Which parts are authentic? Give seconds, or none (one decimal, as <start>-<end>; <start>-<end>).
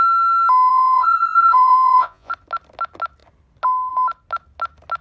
0.0-0.7; 2.3-5.0